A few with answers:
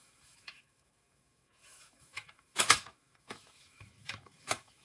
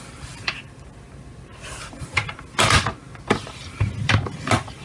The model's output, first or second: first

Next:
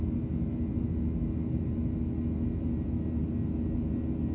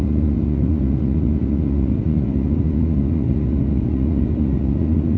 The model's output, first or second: second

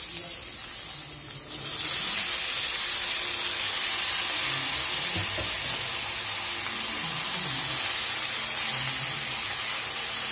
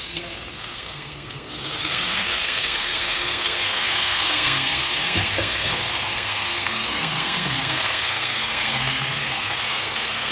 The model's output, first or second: second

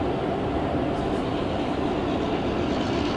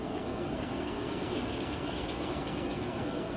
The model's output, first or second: second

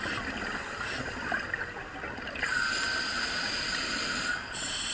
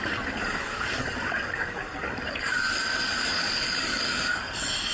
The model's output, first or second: second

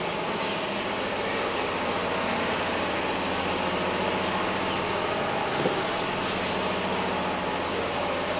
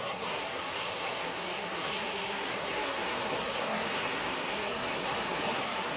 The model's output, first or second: second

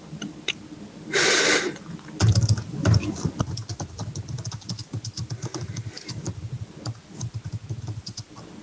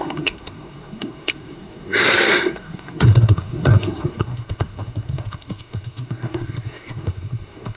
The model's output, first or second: second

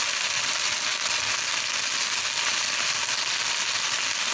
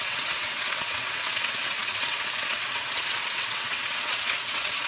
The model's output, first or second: second